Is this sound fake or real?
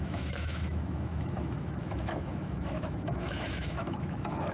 fake